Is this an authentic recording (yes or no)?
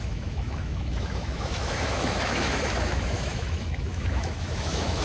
no